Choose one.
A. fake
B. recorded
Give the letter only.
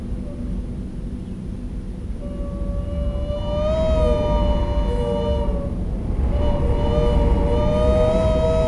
B